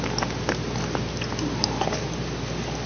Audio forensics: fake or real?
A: real